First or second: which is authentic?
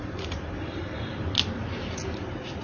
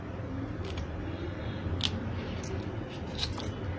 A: second